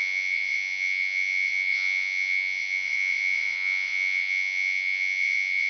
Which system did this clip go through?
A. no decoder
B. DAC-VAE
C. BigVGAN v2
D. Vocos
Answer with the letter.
D